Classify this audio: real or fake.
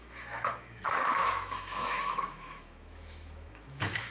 fake